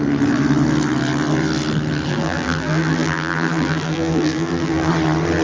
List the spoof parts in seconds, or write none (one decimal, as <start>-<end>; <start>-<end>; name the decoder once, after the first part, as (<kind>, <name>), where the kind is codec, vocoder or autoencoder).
2.1-4.9 (vocoder, BigVGAN v2)